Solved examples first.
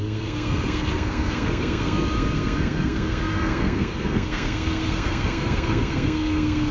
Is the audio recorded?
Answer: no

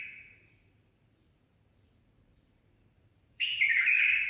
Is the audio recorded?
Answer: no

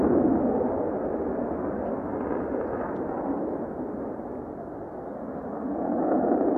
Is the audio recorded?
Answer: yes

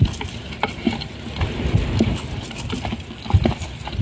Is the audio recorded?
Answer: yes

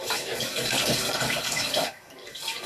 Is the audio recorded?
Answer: no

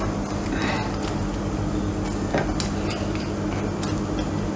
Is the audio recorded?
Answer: yes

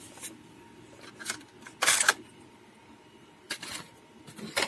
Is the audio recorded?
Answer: yes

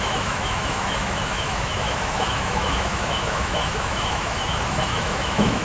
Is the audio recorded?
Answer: no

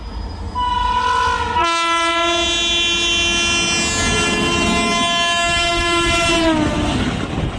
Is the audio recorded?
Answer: yes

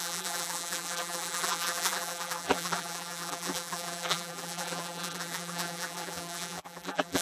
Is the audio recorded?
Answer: no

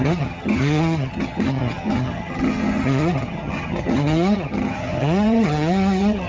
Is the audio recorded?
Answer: no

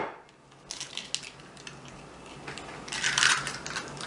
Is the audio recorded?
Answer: yes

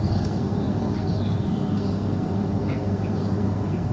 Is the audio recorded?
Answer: no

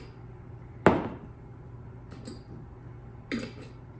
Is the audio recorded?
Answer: yes